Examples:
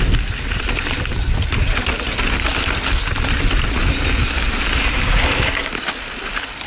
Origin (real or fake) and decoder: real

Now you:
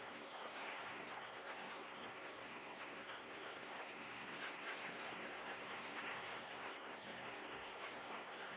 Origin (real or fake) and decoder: fake, codec, SNAC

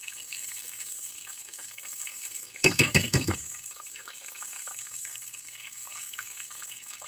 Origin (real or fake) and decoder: fake, codec, SNAC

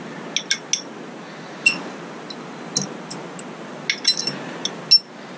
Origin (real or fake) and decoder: real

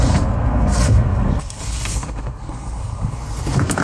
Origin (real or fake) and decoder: fake, codec, SNAC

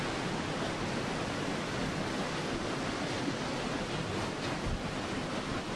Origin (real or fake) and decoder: real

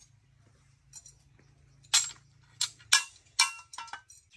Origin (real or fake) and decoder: real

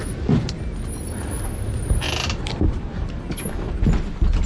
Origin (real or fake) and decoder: real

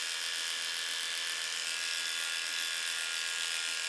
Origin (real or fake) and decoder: real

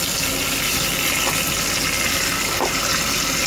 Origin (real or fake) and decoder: real